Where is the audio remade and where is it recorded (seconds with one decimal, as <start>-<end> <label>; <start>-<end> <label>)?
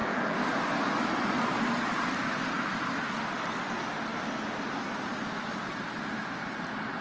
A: 0.0-2.5 remade; 2.5-7.0 recorded